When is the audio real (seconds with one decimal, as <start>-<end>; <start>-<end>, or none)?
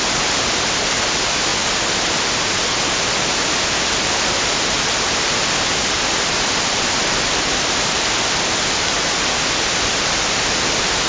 0.0-11.1